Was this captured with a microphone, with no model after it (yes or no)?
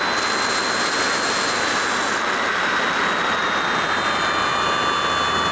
yes